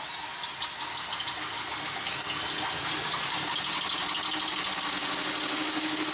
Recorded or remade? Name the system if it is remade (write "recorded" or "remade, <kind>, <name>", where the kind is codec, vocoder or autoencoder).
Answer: recorded